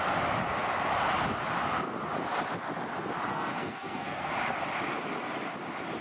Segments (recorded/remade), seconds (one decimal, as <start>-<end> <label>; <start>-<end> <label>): 0.0-3.3 recorded; 3.3-4.3 remade; 4.3-6.0 recorded